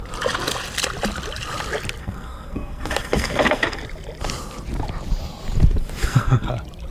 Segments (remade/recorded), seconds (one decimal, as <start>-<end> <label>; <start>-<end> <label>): 0.0-2.0 recorded; 2.0-3.8 remade; 3.8-6.0 recorded; 6.0-6.5 remade; 6.5-6.9 recorded